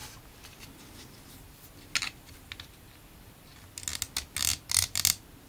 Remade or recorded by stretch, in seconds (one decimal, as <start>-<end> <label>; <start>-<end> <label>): 0.0-2.6 recorded; 2.6-3.5 remade; 3.5-5.5 recorded